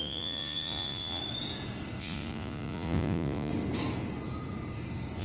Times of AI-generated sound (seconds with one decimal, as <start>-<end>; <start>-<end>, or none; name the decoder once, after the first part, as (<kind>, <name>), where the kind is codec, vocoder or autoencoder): 0.0-1.2 (vocoder, Vocos); 2.0-3.5